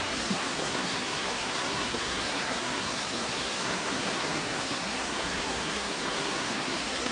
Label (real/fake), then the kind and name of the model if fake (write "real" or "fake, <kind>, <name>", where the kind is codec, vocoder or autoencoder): fake, codec, SNAC